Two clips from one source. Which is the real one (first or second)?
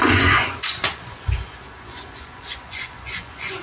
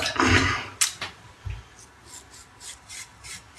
second